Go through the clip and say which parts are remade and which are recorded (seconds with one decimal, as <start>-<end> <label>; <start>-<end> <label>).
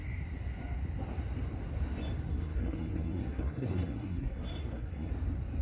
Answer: 0.0-2.3 recorded; 2.3-5.1 remade; 5.1-5.6 recorded